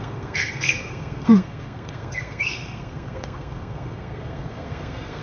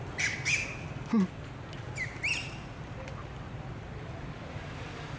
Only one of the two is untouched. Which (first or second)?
second